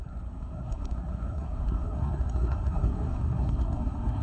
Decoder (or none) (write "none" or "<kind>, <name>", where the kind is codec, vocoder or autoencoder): codec, SNAC